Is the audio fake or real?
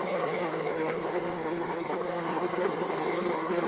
fake